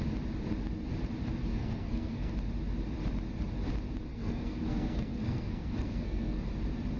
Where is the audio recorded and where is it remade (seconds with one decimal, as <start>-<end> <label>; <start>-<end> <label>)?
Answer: 0.0-1.5 recorded; 1.5-2.3 remade; 2.3-4.1 recorded; 4.1-6.4 remade; 6.4-7.0 recorded